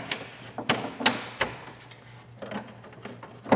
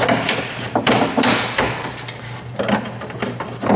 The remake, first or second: second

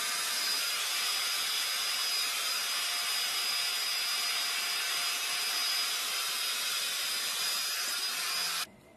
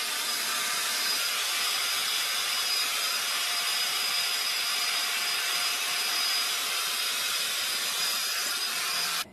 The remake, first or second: second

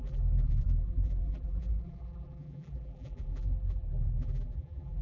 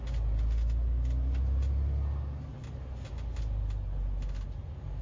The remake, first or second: first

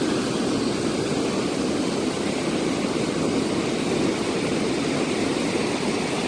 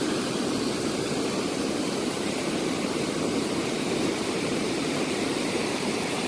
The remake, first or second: second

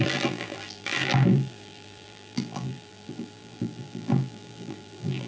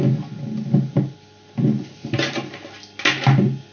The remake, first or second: first